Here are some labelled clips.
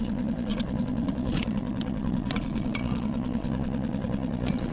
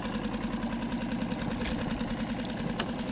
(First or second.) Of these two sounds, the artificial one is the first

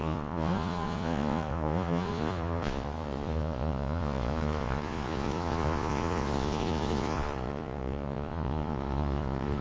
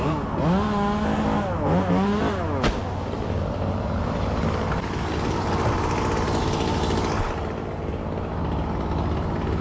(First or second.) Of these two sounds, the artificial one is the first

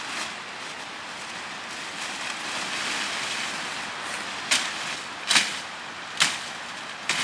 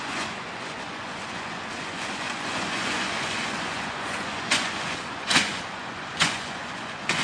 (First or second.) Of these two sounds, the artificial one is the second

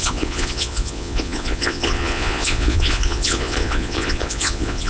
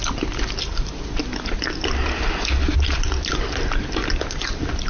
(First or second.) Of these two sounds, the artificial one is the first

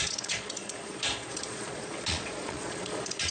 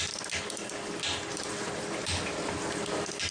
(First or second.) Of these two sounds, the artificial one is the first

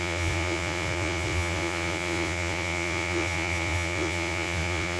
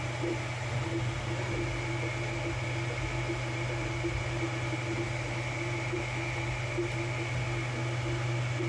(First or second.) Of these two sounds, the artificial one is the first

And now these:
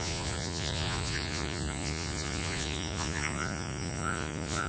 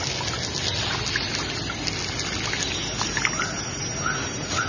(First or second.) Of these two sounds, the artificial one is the first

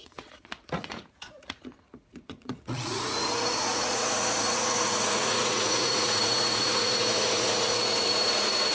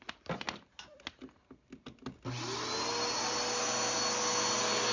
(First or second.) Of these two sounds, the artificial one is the first